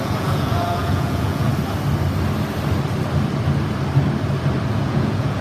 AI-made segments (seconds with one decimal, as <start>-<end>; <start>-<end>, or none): 0.0-1.5; 4.7-5.4